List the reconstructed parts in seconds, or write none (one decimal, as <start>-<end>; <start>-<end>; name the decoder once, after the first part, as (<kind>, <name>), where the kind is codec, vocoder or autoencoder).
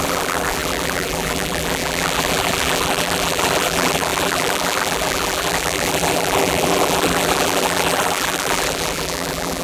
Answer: 0.0-9.6 (vocoder, BigVGAN v2)